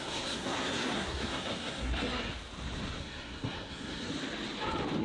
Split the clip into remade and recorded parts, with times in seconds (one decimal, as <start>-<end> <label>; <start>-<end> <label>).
0.0-2.3 remade; 2.3-3.0 recorded; 3.0-4.1 remade; 4.1-5.0 recorded